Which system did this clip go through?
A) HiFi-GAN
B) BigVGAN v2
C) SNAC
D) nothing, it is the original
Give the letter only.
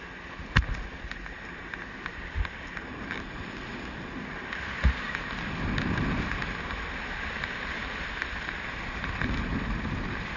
D